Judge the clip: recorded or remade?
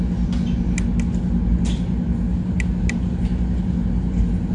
recorded